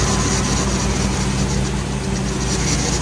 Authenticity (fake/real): real